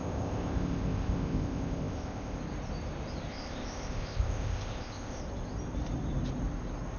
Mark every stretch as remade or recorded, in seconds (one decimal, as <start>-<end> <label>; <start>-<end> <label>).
0.0-2.4 remade; 2.4-3.3 recorded; 3.3-5.2 remade; 5.2-7.0 recorded